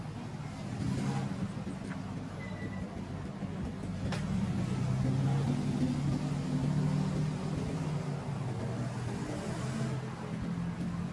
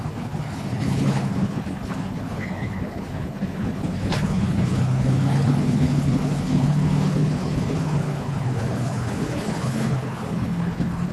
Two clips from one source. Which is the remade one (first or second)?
second